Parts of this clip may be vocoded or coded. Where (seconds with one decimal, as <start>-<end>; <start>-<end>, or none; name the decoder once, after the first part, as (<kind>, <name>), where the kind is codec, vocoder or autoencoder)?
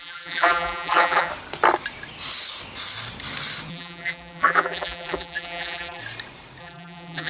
0.0-1.3 (vocoder, BigVGAN v2); 3.7-6.0; 6.6-7.3